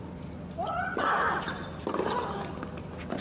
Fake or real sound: real